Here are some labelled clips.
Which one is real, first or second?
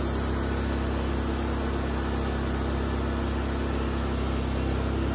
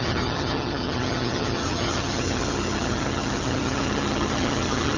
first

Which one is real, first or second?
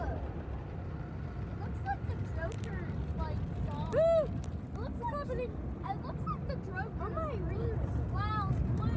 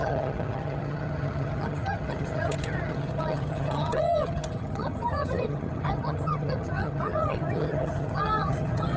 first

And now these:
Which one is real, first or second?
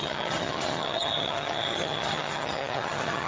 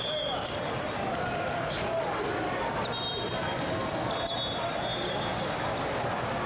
second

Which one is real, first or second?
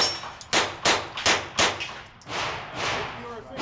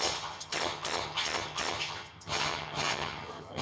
first